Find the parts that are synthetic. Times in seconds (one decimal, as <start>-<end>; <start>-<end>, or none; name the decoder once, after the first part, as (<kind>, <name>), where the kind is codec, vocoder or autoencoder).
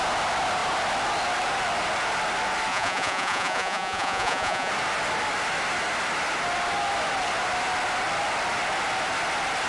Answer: 2.7-4.7 (vocoder, Vocos)